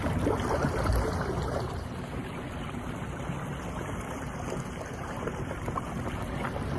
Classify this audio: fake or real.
real